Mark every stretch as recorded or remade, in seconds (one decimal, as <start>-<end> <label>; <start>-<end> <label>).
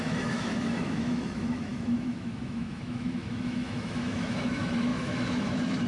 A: 0.0-5.9 remade